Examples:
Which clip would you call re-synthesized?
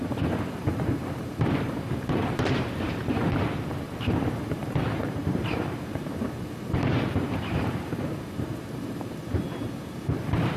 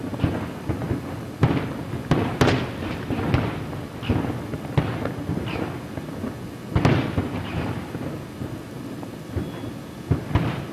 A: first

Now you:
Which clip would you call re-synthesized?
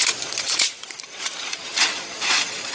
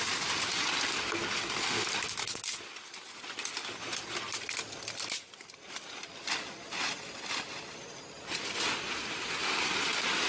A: first